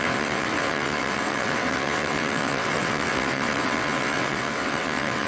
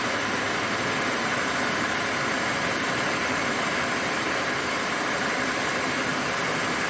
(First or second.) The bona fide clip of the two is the second